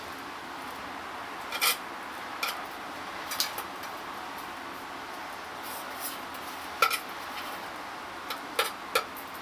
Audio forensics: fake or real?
real